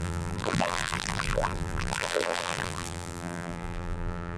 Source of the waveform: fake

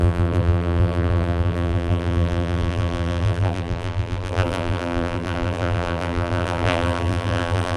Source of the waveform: fake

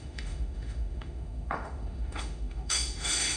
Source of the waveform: fake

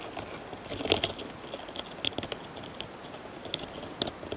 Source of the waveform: real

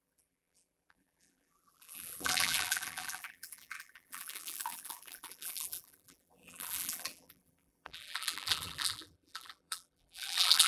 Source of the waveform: fake